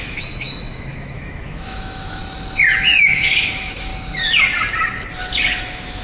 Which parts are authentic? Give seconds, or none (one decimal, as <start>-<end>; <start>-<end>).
2.2-3.0; 3.9-5.6